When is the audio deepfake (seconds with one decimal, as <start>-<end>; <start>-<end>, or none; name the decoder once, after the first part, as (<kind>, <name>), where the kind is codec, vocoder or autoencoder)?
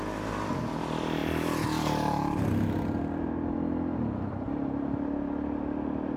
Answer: 1.2-4.9 (vocoder, BigVGAN v2)